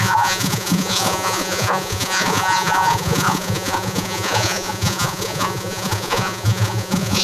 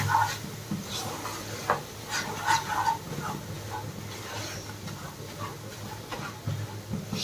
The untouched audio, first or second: second